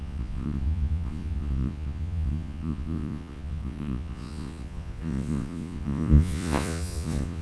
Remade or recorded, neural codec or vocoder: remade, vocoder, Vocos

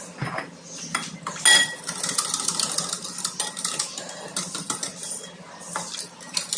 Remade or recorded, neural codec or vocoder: recorded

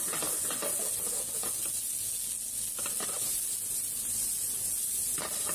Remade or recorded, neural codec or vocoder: recorded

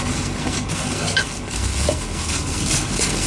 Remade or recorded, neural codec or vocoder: remade, codec, SNAC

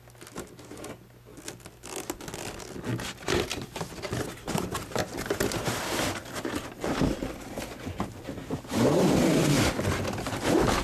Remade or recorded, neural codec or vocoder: recorded